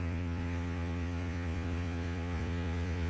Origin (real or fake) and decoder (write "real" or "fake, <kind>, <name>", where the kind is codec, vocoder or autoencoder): fake, vocoder, Vocos